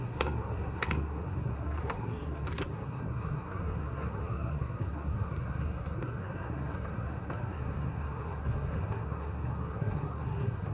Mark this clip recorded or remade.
remade